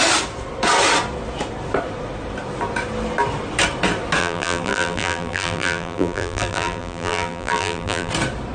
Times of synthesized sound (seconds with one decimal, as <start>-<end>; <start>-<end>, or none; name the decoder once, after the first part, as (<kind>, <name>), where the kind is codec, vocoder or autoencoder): 4.2-8.1 (vocoder, BigVGAN v2)